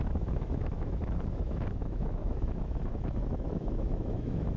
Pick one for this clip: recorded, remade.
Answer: remade